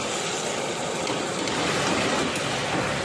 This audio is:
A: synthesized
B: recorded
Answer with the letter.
B